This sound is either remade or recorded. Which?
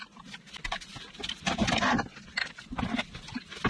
recorded